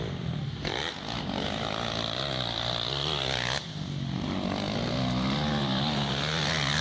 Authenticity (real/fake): real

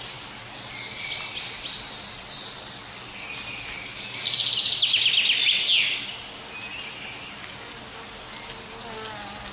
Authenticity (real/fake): real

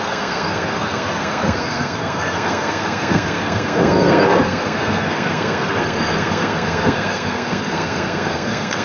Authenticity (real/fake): fake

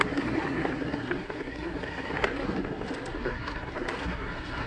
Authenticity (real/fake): fake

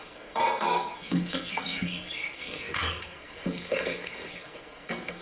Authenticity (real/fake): fake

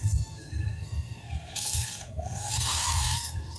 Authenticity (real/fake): fake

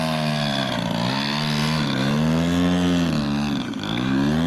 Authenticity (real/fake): real